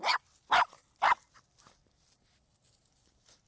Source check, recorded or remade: recorded